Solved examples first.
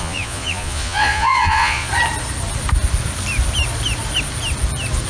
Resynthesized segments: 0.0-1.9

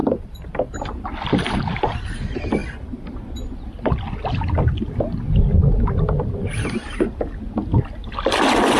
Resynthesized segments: 0.0-1.0

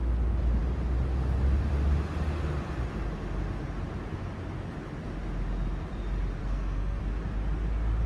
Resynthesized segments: 6.4-7.0

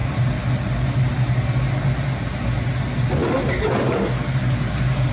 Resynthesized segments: none

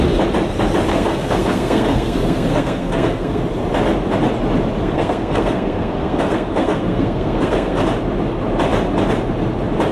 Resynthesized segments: 0.9-3.4; 4.8-7.8

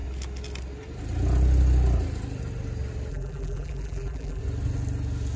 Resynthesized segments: 3.1-4.4